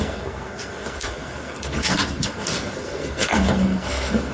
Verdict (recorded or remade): remade